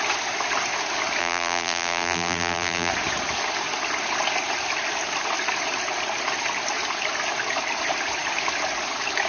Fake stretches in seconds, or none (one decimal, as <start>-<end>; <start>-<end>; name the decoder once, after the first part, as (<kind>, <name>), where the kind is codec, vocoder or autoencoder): 1.2-2.9 (vocoder, BigVGAN v2)